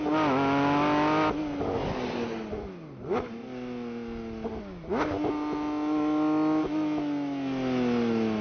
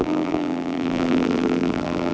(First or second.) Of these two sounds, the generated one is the second